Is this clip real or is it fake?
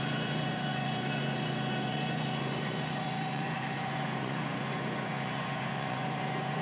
fake